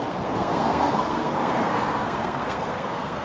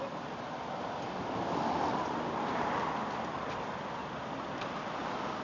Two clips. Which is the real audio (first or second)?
second